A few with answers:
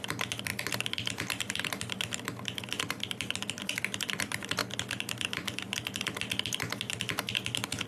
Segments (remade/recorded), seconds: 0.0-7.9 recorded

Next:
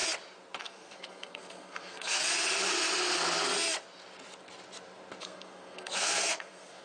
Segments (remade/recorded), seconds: 0.0-0.6 recorded; 0.6-2.2 remade; 2.2-5.2 recorded; 5.2-6.8 remade

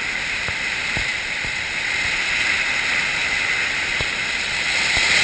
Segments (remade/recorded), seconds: 0.0-5.2 recorded

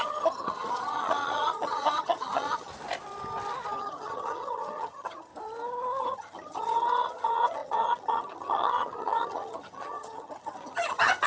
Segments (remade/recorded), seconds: 0.0-2.7 remade; 2.7-3.8 recorded; 3.8-5.3 remade; 5.3-6.0 recorded; 6.0-11.3 remade

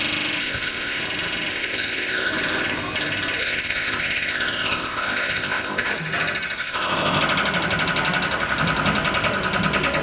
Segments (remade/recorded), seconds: 0.0-0.4 recorded; 0.4-1.0 remade; 1.0-1.5 recorded; 1.5-2.3 remade; 2.3-3.4 recorded; 3.4-5.9 remade; 5.9-6.6 recorded; 6.6-7.2 remade; 7.2-10.0 recorded

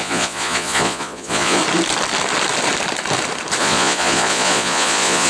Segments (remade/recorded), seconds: 0.0-1.6 remade; 1.6-3.6 recorded; 3.6-5.3 remade